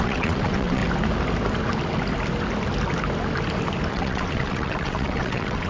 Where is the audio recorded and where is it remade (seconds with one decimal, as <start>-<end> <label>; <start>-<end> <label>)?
0.0-0.8 remade; 0.8-3.9 recorded; 3.9-5.7 remade